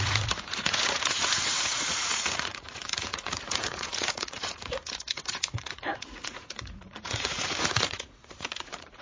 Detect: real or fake fake